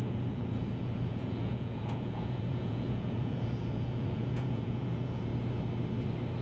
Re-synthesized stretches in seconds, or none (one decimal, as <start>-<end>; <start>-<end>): 0.0-5.3